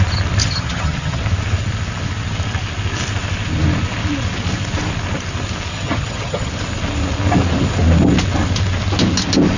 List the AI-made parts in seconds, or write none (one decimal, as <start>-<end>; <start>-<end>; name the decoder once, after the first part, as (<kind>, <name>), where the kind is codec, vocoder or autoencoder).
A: 0.4-1.2 (vocoder, HiFi-GAN); 5.7-6.5